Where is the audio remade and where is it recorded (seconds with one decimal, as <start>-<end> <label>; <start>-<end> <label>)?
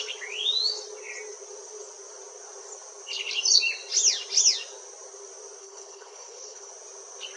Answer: 0.0-5.6 recorded; 5.6-6.7 remade; 6.7-7.4 recorded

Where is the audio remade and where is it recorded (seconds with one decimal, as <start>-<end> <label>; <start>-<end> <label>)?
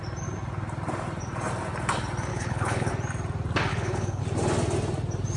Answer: 0.0-2.3 recorded; 2.3-2.9 remade; 2.9-3.7 recorded; 3.7-4.2 remade; 4.2-5.4 recorded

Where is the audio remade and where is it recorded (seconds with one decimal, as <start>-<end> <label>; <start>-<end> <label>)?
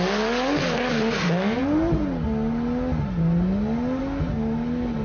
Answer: 0.0-5.0 recorded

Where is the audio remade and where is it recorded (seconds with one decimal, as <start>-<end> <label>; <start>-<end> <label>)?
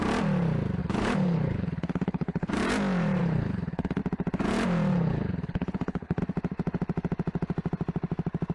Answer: 0.0-0.8 recorded; 0.8-2.5 remade; 2.5-3.2 recorded; 3.2-4.0 remade; 4.0-4.9 recorded; 4.9-6.2 remade; 6.2-8.5 recorded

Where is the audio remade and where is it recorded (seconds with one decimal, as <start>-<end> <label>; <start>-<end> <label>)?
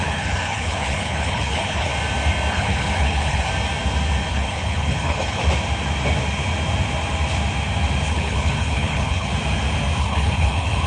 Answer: 0.0-1.9 remade; 1.9-2.5 recorded; 2.5-3.5 remade; 3.5-4.3 recorded; 4.3-5.4 remade; 5.4-8.1 recorded; 8.1-9.3 remade; 9.3-10.0 recorded; 10.0-10.9 remade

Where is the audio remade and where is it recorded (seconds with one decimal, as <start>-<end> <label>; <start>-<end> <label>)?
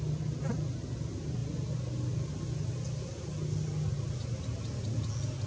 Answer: 0.0-5.5 recorded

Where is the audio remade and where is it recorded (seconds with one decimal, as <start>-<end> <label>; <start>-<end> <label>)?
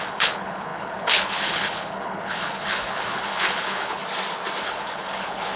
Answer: 0.0-4.0 remade; 4.0-4.6 recorded; 4.6-5.6 remade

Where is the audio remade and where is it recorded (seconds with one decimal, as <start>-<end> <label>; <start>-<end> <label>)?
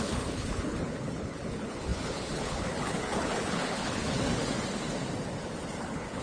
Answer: 0.0-4.4 remade; 4.4-5.8 recorded; 5.8-6.2 remade